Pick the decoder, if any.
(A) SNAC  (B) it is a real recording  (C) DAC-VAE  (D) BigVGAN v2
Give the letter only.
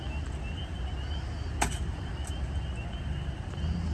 B